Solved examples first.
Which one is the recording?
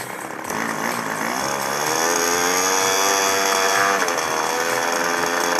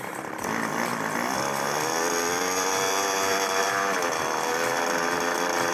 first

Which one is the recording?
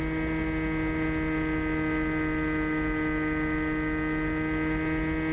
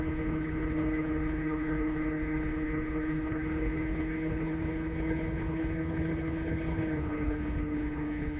first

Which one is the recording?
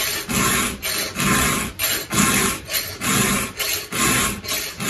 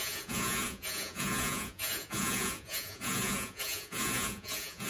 first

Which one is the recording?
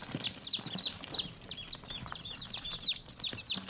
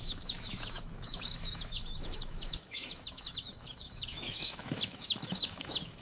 first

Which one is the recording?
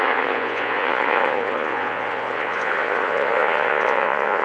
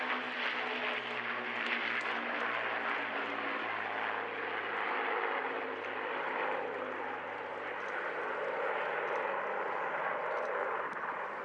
second